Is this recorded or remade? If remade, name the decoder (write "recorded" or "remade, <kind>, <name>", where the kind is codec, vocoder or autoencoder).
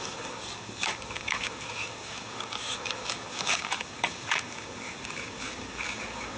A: remade, codec, DAC